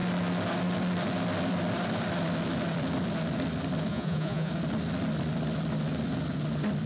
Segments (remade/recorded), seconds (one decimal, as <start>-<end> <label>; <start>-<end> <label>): 0.0-3.9 recorded; 3.9-4.5 remade; 4.5-6.9 recorded